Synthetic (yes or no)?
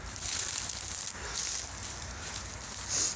no